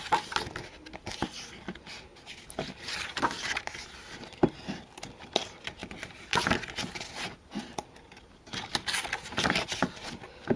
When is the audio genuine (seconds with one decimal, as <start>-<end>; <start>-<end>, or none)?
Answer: 0.0-10.6